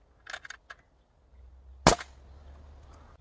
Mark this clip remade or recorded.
recorded